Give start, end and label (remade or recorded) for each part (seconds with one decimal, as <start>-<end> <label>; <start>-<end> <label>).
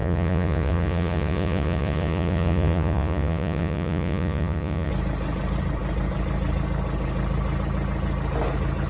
0.0-4.9 remade; 4.9-8.9 recorded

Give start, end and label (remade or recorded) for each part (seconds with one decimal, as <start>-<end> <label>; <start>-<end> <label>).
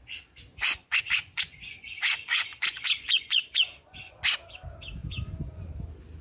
0.0-0.5 recorded; 0.5-4.2 remade; 4.2-5.0 recorded; 5.0-5.6 remade; 5.6-6.2 recorded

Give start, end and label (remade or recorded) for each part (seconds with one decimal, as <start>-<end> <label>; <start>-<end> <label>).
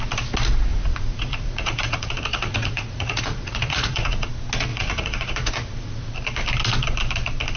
0.0-0.7 recorded; 0.7-4.3 remade; 4.3-4.7 recorded; 4.7-6.1 remade; 6.1-7.6 recorded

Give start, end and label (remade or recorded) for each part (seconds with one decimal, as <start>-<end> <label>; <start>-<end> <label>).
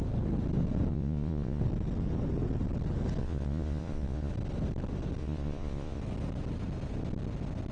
0.0-0.9 recorded; 0.9-1.6 remade; 1.6-3.2 recorded; 3.2-4.3 remade; 4.3-5.2 recorded; 5.2-6.0 remade; 6.0-7.7 recorded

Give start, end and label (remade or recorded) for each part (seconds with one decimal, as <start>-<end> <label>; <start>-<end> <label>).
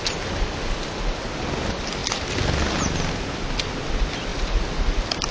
0.0-5.3 recorded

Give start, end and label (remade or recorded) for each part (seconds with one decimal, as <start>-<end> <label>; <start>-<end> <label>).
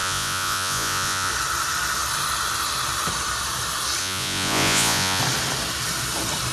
0.0-1.3 remade; 1.3-4.0 recorded; 4.0-5.2 remade; 5.2-6.5 recorded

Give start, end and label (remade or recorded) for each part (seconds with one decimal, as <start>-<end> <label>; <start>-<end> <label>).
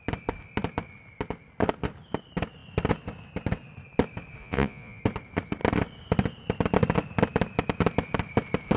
0.0-4.4 recorded; 4.4-5.0 remade; 5.0-8.8 recorded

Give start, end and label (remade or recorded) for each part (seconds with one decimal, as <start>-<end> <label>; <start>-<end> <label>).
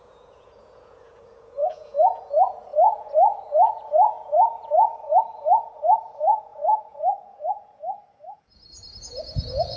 0.0-9.8 remade